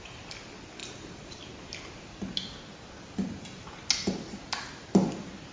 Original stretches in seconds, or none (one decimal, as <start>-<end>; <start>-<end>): 0.0-0.8; 1.4-5.5